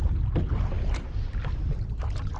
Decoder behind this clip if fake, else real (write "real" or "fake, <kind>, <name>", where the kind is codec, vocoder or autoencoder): real